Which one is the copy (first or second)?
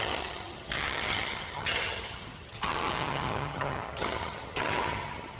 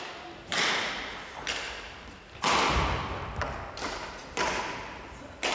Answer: first